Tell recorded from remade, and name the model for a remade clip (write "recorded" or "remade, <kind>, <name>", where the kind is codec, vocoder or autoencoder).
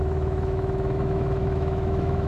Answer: remade, autoencoder, DAC-VAE